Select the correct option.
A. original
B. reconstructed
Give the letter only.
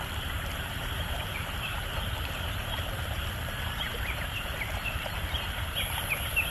B